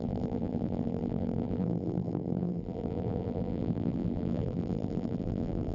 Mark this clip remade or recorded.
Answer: remade